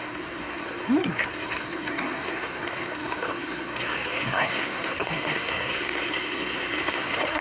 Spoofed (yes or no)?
yes